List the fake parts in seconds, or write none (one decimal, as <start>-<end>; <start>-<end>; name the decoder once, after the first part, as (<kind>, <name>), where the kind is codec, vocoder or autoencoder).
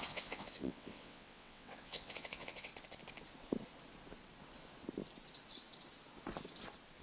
0.0-2.7 (vocoder, WaveNeXt)